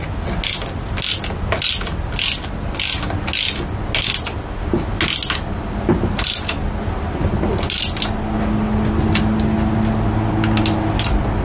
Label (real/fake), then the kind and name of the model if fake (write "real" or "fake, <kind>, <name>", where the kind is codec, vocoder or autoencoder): real